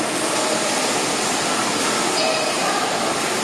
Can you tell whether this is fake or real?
real